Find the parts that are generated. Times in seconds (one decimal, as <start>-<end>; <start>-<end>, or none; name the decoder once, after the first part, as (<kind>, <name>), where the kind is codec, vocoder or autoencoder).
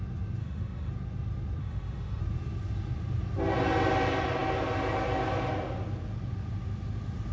0.4-0.9 (autoencoder, DAC-VAE); 1.6-2.2